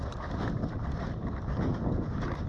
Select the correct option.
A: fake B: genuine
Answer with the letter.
B